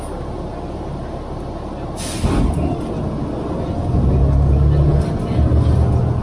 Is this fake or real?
real